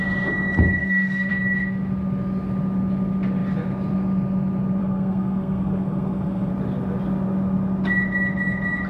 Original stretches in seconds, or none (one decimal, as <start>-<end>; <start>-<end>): 0.0-0.8; 1.3-4.8; 6.5-8.9